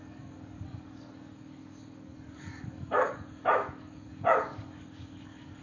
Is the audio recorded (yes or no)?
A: no